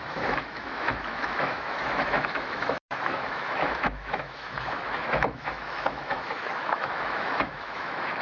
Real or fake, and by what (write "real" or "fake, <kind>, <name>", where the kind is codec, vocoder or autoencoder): fake, autoencoder, DAC-VAE